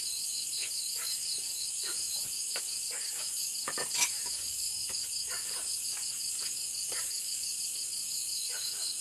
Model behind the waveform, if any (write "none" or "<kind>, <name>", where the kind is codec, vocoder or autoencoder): codec, DAC